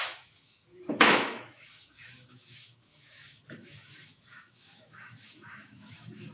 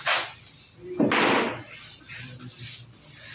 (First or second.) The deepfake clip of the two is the first